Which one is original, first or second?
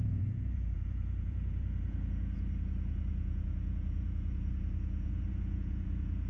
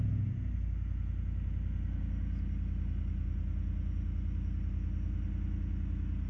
second